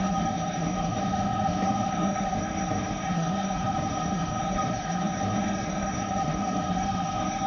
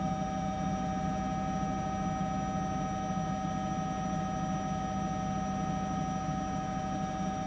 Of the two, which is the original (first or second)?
second